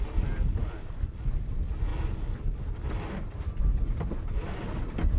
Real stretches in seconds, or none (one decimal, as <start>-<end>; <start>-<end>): 0.0-0.6; 1.2-5.2